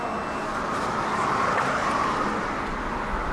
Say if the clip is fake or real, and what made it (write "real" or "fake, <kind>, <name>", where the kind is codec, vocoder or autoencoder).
real